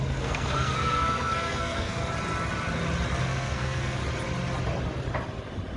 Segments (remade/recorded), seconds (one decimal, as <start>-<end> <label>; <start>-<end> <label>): 0.0-2.0 remade; 2.0-3.2 recorded; 3.2-4.0 remade; 4.0-5.8 recorded